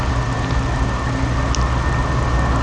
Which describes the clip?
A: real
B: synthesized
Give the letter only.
A